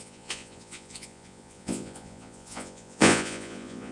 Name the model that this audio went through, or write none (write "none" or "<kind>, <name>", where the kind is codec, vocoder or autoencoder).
vocoder, Vocos